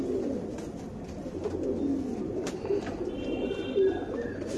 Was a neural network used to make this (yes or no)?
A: no